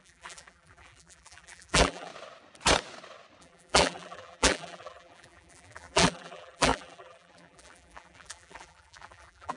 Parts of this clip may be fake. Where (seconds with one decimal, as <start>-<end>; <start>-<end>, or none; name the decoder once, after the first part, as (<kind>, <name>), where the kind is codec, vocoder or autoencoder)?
0.0-2.1 (vocoder, BigVGAN v2); 3.4-9.6